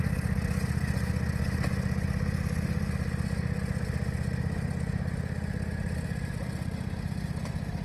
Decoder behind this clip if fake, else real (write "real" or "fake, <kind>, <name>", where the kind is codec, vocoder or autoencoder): real